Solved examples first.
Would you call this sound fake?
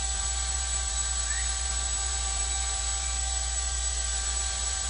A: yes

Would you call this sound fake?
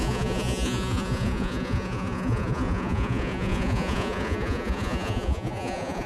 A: yes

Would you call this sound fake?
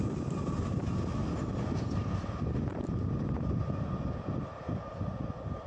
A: no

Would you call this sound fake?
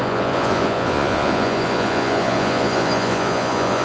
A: yes